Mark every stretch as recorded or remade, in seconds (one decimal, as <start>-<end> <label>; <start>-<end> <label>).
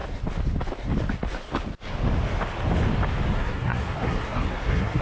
0.0-3.3 recorded; 3.3-5.0 remade